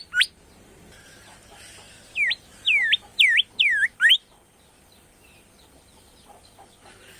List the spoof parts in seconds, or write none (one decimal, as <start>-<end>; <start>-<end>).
none